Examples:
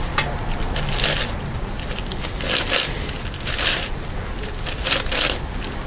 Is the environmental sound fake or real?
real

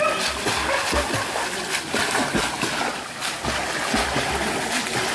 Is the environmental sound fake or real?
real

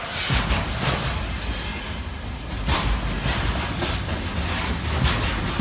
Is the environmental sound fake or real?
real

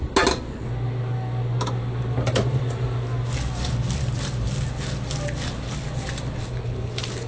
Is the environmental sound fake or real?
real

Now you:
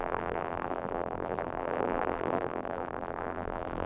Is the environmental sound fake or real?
fake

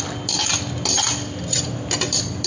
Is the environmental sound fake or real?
real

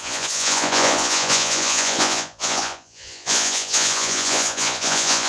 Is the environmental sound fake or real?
fake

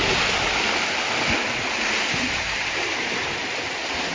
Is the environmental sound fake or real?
real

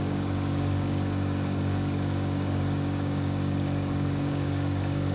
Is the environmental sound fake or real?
fake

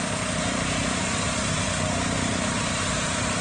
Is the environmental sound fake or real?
real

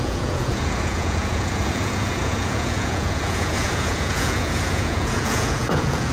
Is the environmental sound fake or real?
fake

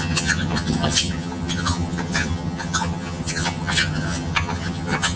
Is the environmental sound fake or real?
fake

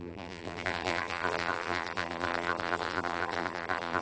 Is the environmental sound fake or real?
fake